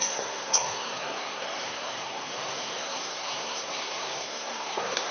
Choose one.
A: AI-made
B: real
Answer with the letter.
A